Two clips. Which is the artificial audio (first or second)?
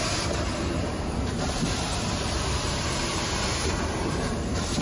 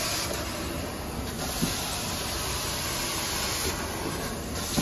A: first